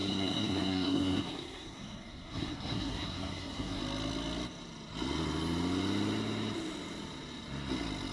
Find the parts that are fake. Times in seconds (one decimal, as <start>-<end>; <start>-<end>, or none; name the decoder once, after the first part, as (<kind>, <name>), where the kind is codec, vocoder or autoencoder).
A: 0.0-3.8 (codec, SNAC)